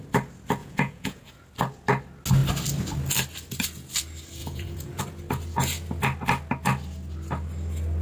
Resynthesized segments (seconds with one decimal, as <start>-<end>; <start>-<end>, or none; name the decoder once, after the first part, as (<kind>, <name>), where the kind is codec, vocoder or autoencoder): 0.6-1.3 (vocoder, Vocos); 4.4-5.0